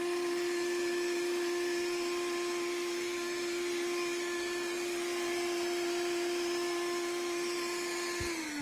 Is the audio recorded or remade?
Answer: recorded